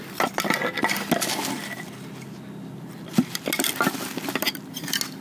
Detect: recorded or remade recorded